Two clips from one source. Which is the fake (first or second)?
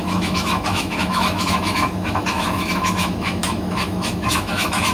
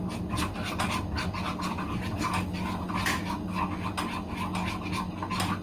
first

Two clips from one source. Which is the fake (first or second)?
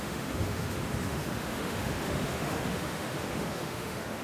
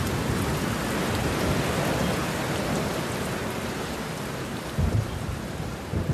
first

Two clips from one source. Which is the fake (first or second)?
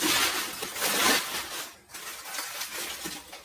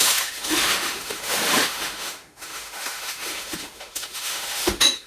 second